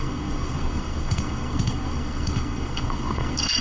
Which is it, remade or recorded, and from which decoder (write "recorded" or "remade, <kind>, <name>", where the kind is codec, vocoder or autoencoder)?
remade, codec, SNAC